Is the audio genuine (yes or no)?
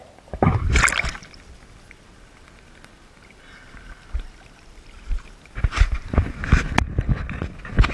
yes